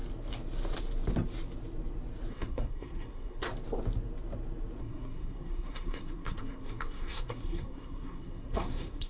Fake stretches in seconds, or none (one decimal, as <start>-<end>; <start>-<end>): 2.3-3.5; 4.8-9.1